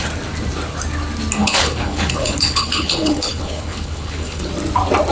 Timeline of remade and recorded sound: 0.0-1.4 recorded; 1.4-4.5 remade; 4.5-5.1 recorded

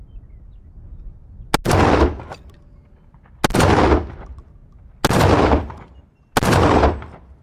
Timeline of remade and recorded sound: 0.0-7.4 recorded

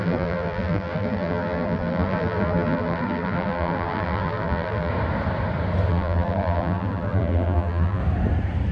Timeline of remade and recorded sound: 0.0-4.9 remade; 4.9-5.9 recorded; 5.9-8.0 remade; 8.0-8.7 recorded

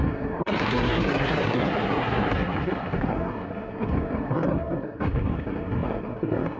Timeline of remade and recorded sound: 0.0-6.6 remade

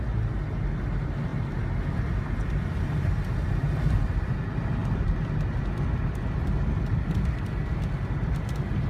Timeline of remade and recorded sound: 0.0-8.9 recorded